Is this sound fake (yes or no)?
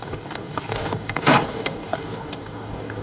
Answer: yes